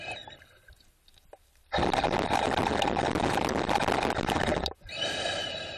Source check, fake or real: real